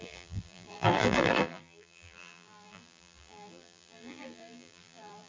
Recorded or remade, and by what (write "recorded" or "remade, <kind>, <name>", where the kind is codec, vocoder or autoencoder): remade, vocoder, BigVGAN v2